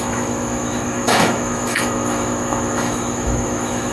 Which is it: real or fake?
fake